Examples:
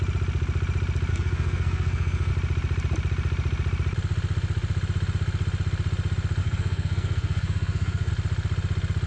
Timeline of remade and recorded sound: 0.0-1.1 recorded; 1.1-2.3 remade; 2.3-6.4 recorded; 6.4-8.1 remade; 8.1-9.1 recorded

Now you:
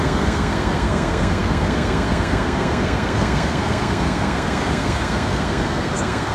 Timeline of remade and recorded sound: 0.0-6.3 remade

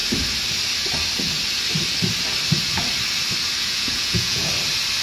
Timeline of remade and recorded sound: 0.0-3.6 recorded; 3.6-4.5 remade; 4.5-5.0 recorded

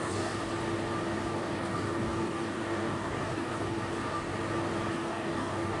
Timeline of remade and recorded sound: 0.0-0.5 remade; 0.5-1.2 recorded; 1.2-4.3 remade; 4.3-4.9 recorded; 4.9-5.8 remade

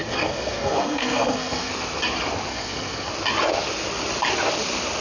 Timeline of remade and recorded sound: 0.0-1.7 remade; 1.7-2.5 recorded; 2.5-3.1 remade; 3.1-5.0 recorded

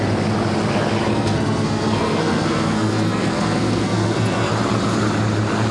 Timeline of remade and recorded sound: 0.0-1.1 recorded; 1.1-4.5 remade; 4.5-5.7 recorded

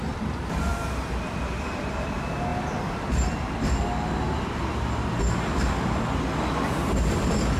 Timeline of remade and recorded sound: 0.0-7.6 recorded

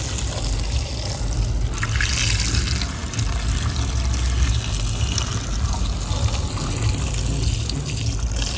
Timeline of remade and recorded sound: 0.0-8.6 recorded